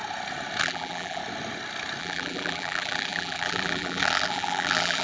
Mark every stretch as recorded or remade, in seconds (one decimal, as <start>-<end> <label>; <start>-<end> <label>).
0.0-0.6 recorded; 0.6-1.2 remade; 1.2-2.0 recorded; 2.0-5.0 remade